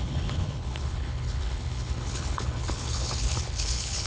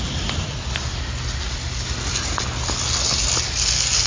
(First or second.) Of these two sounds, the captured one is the second